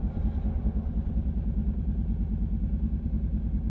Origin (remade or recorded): recorded